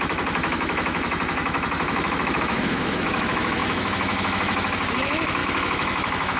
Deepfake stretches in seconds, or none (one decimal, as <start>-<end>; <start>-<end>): 0.0-6.4